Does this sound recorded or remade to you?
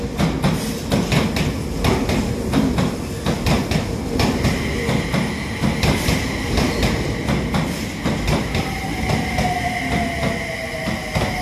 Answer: recorded